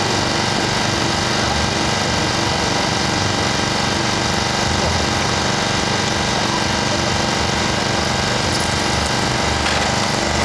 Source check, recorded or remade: recorded